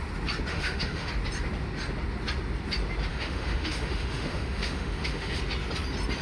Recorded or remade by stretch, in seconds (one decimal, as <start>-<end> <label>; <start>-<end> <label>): 0.0-0.5 recorded; 0.5-1.1 remade; 1.1-3.1 recorded; 3.1-5.4 remade; 5.4-6.2 recorded